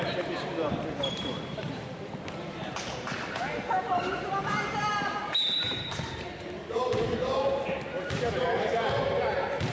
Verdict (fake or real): fake